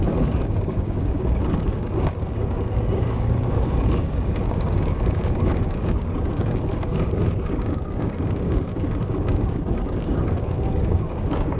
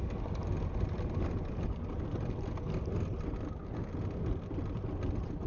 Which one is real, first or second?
second